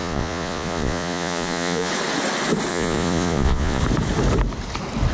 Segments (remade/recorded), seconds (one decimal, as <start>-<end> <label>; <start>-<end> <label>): 0.0-1.9 remade; 1.9-2.7 recorded; 2.7-3.8 remade; 3.8-5.1 recorded